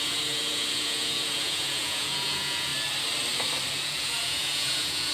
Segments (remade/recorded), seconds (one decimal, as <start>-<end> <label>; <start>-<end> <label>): 0.0-2.7 remade; 2.7-3.7 recorded; 3.7-5.1 remade

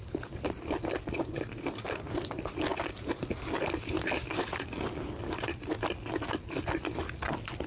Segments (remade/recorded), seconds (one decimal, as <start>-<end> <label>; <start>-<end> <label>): 0.0-7.7 recorded

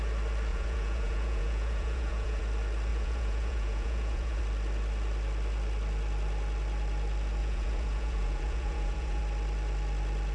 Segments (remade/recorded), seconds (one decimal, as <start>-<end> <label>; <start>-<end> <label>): 0.0-0.5 recorded; 0.5-2.4 remade; 2.4-2.9 recorded; 2.9-4.4 remade; 4.4-7.4 recorded; 7.4-9.2 remade; 9.2-10.3 recorded

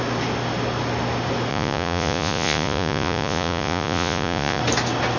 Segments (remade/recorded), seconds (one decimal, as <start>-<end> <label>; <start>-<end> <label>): 0.0-1.5 recorded; 1.5-4.6 remade; 4.6-5.2 recorded

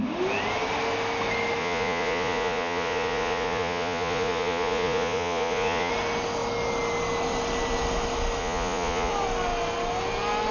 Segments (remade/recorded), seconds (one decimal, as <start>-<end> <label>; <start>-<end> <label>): 0.0-1.6 recorded; 1.6-5.9 remade; 5.9-8.4 recorded; 8.4-9.1 remade; 9.1-10.5 recorded

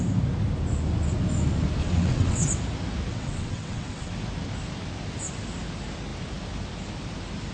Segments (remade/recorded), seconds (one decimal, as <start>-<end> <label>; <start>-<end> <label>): 0.0-1.8 recorded; 1.8-2.5 remade; 2.5-3.1 recorded; 3.1-4.1 remade; 4.1-7.5 recorded